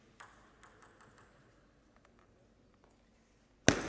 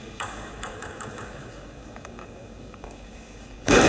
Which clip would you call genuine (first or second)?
first